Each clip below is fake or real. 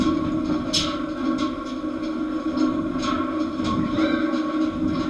real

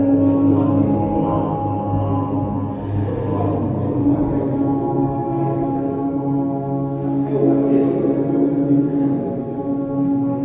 real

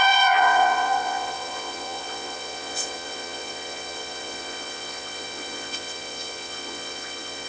fake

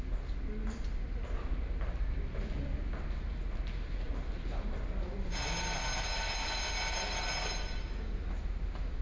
real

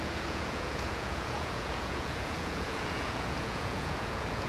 fake